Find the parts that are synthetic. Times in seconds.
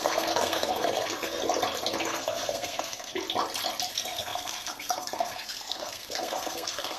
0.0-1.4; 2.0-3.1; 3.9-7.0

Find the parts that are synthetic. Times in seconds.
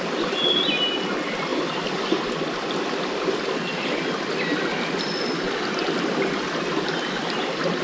none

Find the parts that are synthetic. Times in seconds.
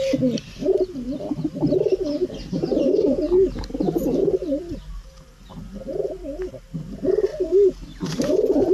0.0-7.3; 8.2-8.7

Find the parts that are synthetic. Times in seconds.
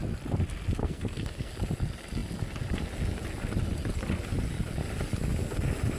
0.8-1.5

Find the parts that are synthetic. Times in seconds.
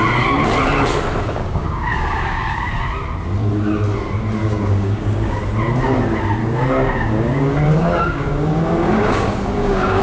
1.2-2.7; 4.4-5.4; 6.4-10.0